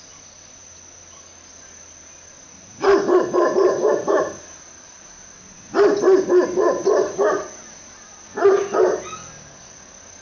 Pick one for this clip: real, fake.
real